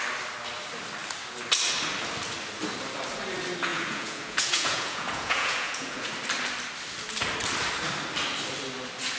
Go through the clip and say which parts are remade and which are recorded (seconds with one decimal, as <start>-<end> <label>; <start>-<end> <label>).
0.0-3.7 recorded; 3.7-6.1 remade; 6.1-9.2 recorded